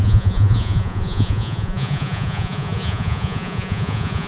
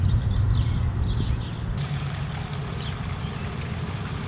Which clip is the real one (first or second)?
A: second